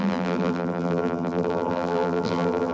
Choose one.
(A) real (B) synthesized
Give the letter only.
B